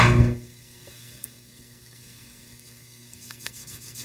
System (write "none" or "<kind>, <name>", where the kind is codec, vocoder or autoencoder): codec, SNAC